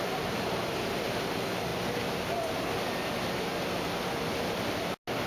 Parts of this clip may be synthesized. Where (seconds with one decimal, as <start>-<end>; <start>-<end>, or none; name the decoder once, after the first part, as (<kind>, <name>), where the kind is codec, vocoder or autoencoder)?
0.0-1.7 (vocoder, BigVGAN v2)